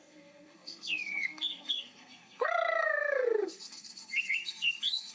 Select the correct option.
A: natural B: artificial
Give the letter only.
B